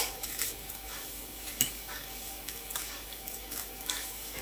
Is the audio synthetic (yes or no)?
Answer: yes